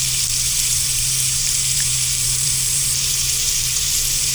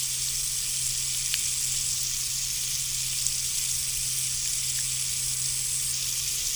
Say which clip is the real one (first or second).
second